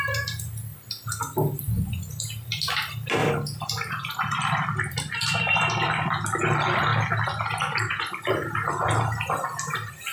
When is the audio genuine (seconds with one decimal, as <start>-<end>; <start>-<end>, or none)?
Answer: 0.0-3.2; 6.1-10.1